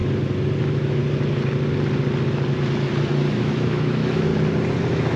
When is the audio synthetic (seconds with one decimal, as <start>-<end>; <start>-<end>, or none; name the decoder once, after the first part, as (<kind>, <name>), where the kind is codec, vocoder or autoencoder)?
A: 0.6-1.0 (autoencoder, DAC-VAE); 3.4-4.3; 4.8-5.2